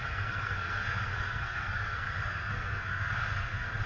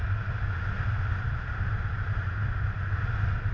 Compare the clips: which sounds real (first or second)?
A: second